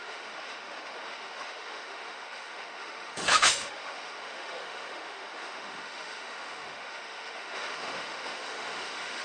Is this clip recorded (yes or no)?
no